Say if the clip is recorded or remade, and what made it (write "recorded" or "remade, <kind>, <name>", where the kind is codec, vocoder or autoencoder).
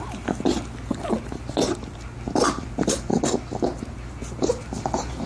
recorded